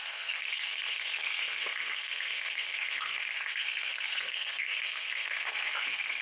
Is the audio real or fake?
fake